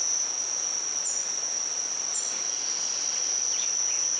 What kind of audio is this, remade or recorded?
recorded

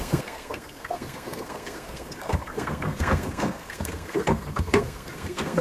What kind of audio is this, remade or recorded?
remade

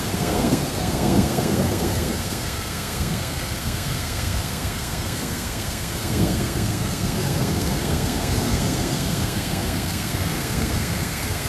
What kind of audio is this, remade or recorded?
remade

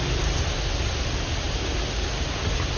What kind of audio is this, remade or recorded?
recorded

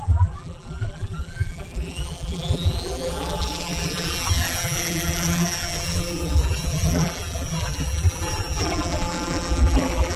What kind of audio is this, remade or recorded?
remade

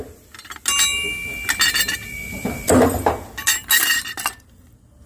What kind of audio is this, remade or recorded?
recorded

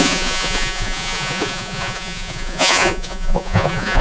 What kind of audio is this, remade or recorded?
remade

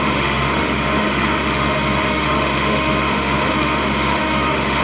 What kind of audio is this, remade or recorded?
remade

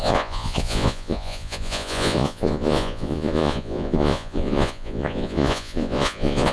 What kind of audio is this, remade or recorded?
remade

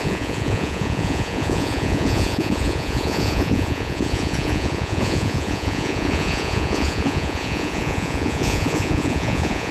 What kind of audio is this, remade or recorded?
remade